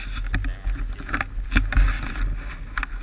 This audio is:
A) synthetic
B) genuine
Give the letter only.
B